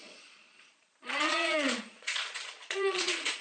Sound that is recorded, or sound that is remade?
remade